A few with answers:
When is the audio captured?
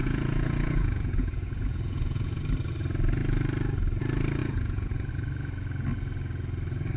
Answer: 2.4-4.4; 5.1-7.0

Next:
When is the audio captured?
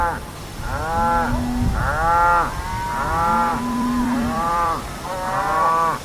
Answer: 0.0-3.5; 5.1-6.0